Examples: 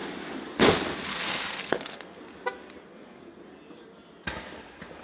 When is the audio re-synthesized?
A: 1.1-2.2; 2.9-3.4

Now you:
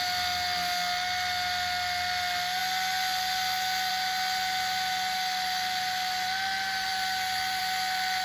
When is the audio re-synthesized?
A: none

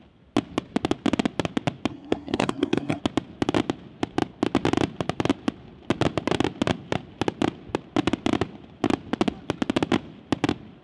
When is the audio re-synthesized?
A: 1.9-3.0

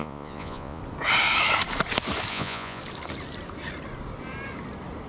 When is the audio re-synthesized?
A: 0.0-0.8; 2.3-2.8

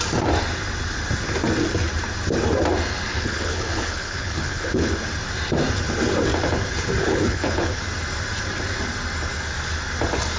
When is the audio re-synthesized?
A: 3.1-4.9; 7.0-7.8

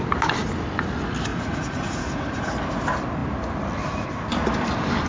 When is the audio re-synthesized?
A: 1.3-2.5

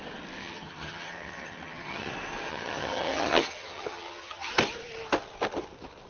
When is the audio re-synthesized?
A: 0.4-2.1; 2.5-4.5